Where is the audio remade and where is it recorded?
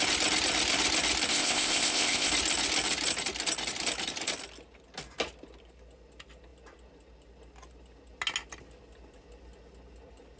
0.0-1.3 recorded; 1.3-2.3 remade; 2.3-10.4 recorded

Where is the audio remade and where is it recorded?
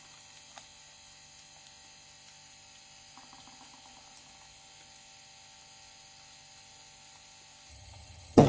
0.0-7.7 recorded; 7.7-8.5 remade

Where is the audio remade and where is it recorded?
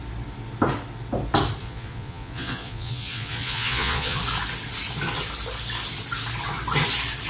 0.0-1.6 recorded; 1.6-4.2 remade; 4.2-7.3 recorded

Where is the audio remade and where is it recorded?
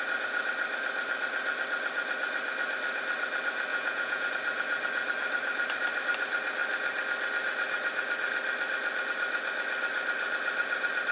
0.0-3.7 recorded; 3.7-4.3 remade; 4.3-11.1 recorded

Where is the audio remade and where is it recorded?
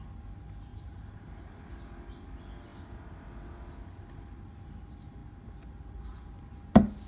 0.0-0.7 recorded; 0.7-1.3 remade; 1.3-7.1 recorded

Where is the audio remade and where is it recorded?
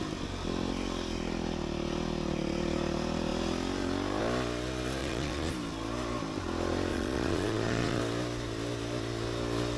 0.0-5.0 recorded; 5.0-5.5 remade; 5.5-6.9 recorded; 6.9-8.0 remade; 8.0-9.8 recorded